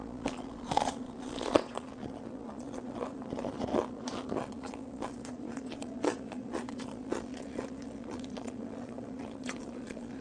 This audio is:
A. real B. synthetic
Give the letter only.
B